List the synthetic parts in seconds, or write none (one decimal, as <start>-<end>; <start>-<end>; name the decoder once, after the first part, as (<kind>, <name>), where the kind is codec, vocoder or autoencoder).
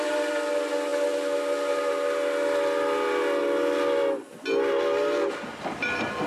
none